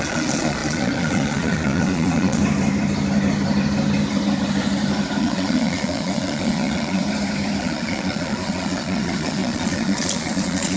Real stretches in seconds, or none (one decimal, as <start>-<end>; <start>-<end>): 2.4-5.2; 7.0-7.6